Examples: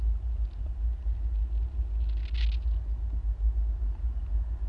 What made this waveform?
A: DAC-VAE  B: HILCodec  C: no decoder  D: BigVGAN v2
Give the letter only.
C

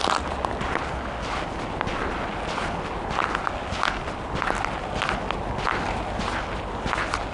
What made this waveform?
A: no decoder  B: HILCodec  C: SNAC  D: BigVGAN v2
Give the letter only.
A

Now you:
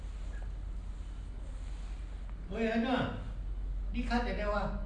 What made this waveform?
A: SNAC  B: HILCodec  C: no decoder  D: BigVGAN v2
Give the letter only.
C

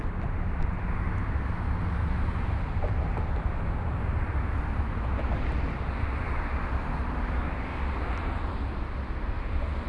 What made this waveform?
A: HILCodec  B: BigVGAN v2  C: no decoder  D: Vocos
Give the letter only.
C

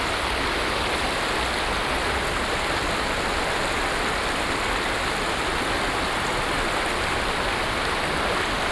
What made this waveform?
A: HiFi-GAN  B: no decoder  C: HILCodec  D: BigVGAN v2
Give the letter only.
B